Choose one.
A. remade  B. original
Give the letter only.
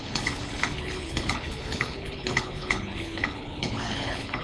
A